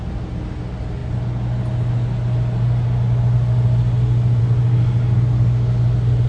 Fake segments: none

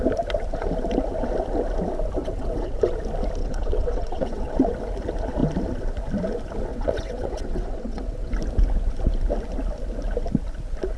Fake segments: 2.2-2.8 (vocoder, WaveNeXt); 3.4-4.7; 6.7-8.3

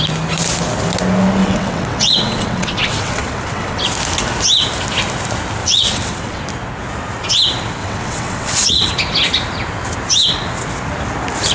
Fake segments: 1.4-3.8 (vocoder, WaveNeXt); 5.6-6.4; 7.8-8.9

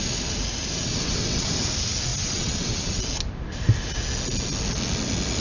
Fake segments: 0.8-1.5 (vocoder, WaveNeXt); 2.1-3.0

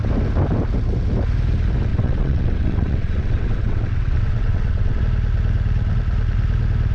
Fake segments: 1.9-5.0 (vocoder, WaveNeXt)